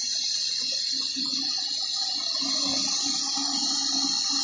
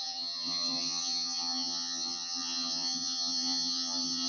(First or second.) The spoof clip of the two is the second